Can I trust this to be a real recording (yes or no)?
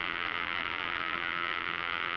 no